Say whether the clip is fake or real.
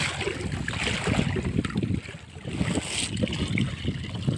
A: real